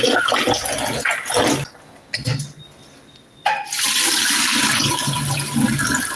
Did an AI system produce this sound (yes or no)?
no